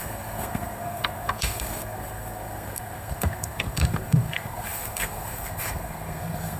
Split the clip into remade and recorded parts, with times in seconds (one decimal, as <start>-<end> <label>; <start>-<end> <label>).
0.0-6.6 remade